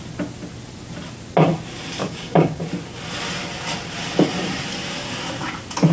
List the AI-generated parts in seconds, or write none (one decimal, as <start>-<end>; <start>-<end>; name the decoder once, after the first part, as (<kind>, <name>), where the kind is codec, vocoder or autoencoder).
2.0-2.6 (codec, DAC)